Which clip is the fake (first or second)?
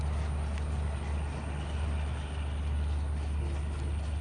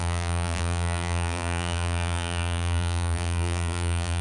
second